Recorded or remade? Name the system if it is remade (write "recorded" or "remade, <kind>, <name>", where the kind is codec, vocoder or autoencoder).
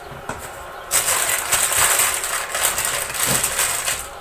recorded